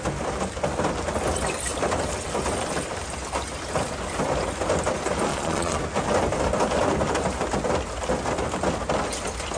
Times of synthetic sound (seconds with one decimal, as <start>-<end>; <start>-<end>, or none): 5.3-5.8